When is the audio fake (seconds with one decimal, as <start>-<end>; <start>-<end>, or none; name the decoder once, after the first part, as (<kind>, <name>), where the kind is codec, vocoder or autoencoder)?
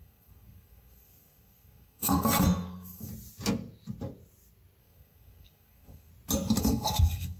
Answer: 0.0-3.1 (codec, SNAC); 4.8-6.1; 6.6-7.4